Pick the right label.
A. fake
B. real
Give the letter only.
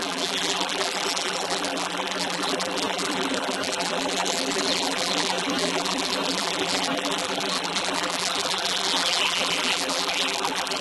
A